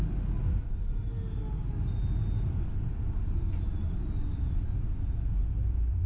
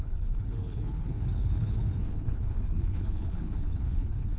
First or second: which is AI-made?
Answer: second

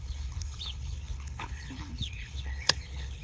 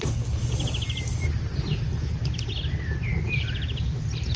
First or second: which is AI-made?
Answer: first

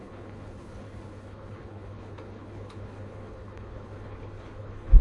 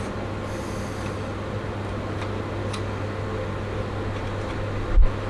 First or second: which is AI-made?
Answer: first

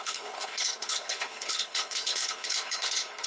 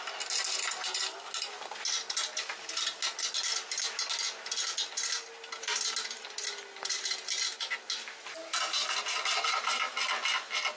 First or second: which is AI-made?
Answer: first